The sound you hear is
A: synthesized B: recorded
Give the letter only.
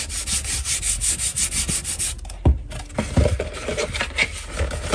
B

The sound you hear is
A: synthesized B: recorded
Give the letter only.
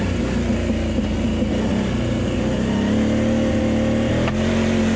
B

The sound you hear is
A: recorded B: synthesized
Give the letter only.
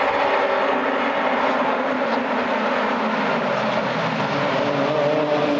A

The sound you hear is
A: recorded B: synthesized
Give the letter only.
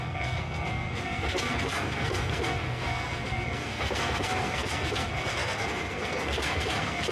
B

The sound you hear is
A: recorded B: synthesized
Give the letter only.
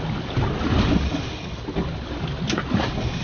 A